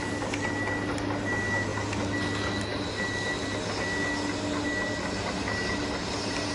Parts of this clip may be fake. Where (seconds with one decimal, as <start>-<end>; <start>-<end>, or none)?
none